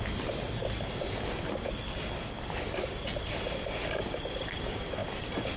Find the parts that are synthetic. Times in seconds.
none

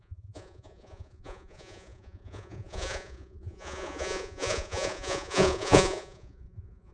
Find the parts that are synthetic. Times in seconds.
0.0-6.9 (vocoder, Vocos)

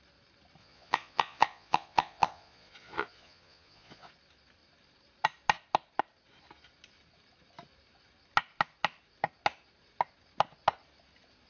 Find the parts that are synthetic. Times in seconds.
0.6-4.1 (vocoder, Vocos)

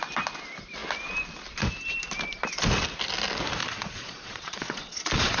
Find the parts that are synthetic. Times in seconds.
3.6-5.4 (vocoder, Vocos)

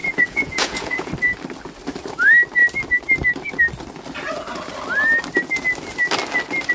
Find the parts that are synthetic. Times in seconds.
0.0-1.1 (vocoder, Vocos)

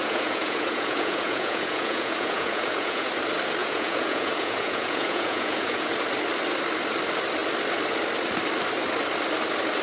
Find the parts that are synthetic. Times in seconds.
0.0-3.1 (vocoder, Vocos); 3.6-5.9